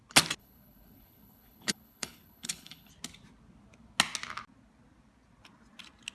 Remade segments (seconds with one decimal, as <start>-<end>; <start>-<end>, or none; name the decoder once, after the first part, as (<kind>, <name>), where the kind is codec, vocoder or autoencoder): 0.4-2.9 (codec, HILCodec)